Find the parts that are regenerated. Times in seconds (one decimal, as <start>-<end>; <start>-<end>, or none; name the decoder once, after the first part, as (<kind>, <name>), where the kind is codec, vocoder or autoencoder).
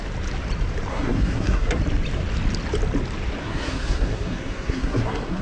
0.9-1.8 (codec, SNAC); 3.4-5.4